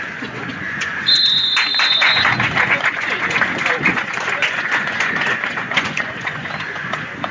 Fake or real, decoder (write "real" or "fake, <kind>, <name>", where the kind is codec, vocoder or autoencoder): fake, vocoder, Vocos